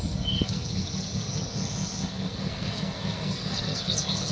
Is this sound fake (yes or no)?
yes